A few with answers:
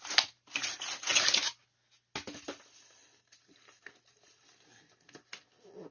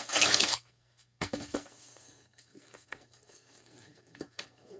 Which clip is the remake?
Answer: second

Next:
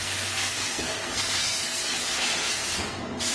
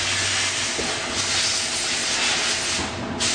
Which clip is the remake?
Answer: first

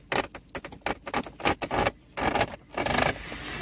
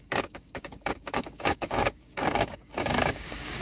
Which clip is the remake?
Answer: second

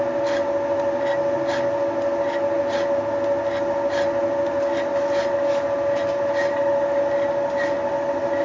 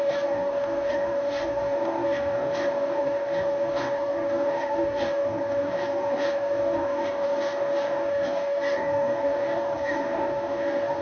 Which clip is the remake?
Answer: second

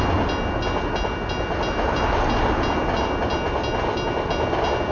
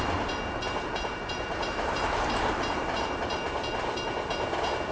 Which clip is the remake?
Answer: second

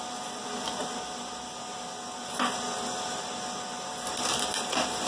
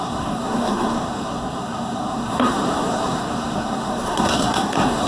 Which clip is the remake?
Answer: second